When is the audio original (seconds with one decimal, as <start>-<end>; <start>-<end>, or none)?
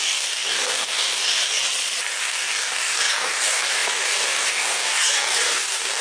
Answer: 1.6-2.2